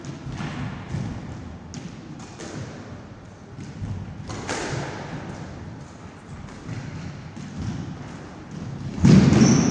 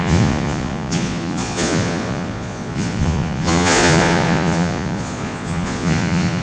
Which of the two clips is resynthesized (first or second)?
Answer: second